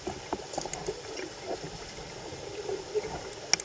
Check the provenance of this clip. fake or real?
real